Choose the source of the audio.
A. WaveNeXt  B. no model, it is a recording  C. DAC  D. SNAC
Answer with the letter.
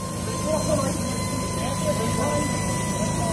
B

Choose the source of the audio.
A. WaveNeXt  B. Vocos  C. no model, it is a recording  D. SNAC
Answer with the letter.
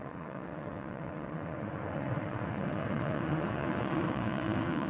A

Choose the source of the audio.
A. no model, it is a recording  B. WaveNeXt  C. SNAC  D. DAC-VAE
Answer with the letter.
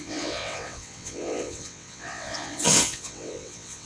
B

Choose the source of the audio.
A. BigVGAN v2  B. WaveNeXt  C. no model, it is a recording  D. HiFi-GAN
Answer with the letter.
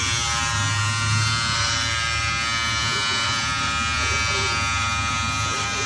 C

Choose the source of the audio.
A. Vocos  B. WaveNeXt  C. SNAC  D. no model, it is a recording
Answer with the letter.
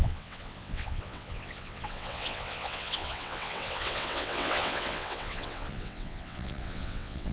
B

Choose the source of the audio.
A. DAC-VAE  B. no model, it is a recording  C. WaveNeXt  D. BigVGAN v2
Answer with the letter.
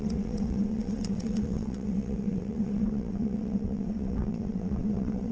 C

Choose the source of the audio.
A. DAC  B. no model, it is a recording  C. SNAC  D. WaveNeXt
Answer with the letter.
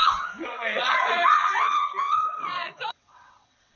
D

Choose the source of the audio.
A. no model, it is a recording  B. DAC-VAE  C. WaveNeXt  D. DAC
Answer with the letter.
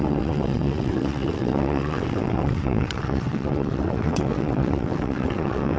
C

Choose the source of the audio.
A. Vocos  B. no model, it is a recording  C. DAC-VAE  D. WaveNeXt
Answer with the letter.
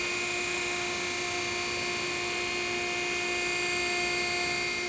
B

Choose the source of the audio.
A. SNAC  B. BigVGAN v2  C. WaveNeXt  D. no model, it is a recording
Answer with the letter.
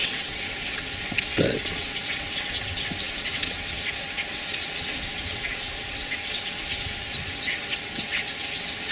C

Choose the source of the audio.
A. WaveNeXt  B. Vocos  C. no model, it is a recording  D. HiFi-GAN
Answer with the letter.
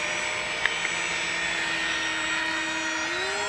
C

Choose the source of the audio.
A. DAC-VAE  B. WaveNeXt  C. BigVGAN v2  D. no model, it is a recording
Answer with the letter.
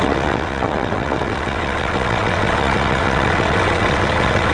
B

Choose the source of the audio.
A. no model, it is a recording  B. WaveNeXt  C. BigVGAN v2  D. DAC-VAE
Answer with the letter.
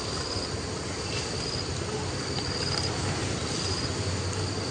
A